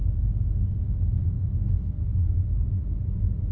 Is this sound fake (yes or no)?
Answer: no